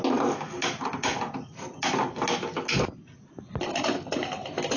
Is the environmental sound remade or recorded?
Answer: recorded